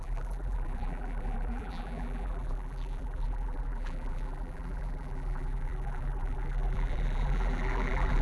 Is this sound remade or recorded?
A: remade